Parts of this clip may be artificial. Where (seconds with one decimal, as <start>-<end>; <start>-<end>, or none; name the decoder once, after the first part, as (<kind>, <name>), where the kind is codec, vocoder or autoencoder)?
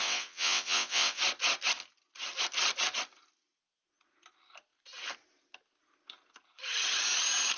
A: 0.0-1.2 (vocoder, WaveNeXt)